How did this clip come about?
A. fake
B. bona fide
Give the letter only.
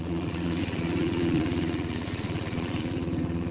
A